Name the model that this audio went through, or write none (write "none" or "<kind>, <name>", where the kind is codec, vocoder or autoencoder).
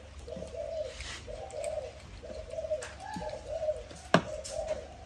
none